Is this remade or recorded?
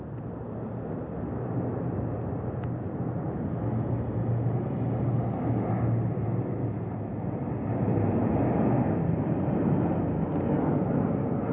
recorded